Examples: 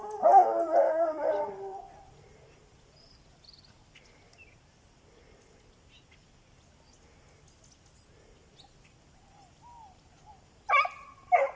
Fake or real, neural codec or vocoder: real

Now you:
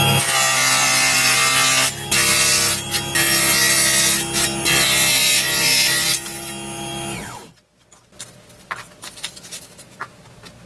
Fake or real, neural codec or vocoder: real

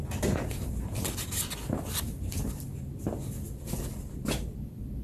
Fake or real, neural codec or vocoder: real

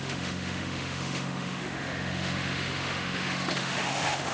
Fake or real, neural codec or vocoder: fake, autoencoder, DAC-VAE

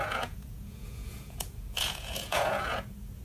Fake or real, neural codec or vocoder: fake, vocoder, Vocos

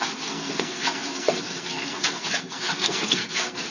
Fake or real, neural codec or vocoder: fake, codec, SNAC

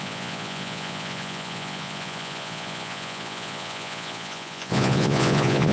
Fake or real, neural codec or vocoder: fake, vocoder, Vocos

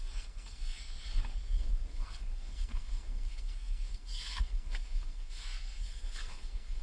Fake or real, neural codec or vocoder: fake, codec, SNAC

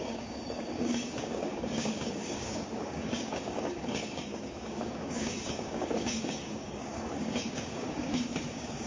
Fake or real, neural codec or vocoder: fake, codec, DAC